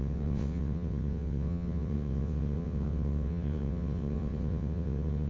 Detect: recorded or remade remade